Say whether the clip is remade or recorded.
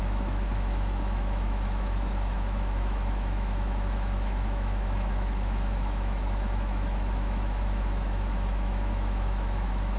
remade